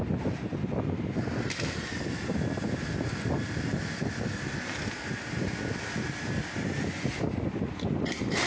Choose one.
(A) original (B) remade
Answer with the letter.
A